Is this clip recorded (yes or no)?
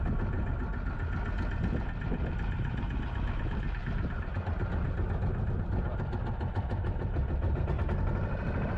yes